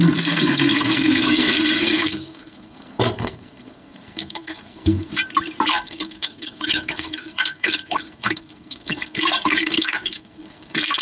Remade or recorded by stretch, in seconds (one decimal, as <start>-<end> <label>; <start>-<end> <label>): 0.0-5.1 remade; 5.1-5.7 recorded; 5.7-11.0 remade